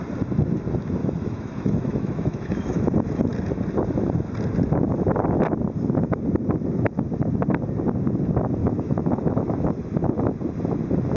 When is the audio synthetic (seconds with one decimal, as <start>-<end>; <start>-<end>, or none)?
1.0-2.8; 8.6-9.5